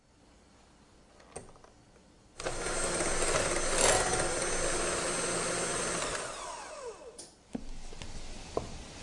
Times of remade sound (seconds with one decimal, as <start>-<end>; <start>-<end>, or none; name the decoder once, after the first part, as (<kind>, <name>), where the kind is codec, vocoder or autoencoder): 5.7-6.7 (vocoder, BigVGAN v2)